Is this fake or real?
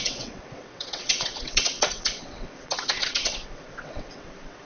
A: fake